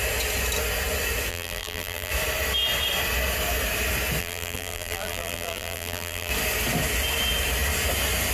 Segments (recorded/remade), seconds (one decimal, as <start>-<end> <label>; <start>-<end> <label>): 0.0-1.3 recorded; 1.3-2.1 remade; 2.1-4.2 recorded; 4.2-6.3 remade; 6.3-8.3 recorded